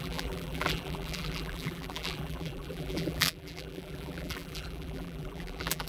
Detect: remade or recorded remade